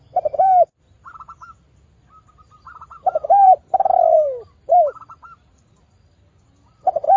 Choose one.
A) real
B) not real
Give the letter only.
B